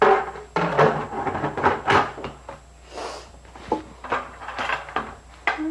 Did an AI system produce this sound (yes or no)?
no